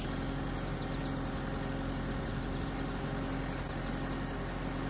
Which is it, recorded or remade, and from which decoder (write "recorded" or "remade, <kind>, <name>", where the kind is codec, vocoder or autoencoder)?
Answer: recorded